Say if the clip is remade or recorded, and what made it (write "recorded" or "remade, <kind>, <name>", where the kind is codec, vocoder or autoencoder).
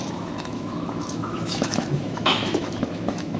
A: remade, autoencoder, DAC-VAE